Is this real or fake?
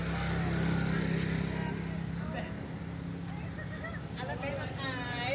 real